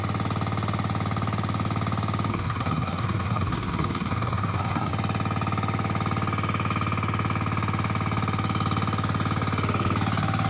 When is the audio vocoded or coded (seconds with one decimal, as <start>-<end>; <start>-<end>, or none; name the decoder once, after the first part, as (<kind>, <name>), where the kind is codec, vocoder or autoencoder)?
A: 2.3-4.9 (codec, SNAC)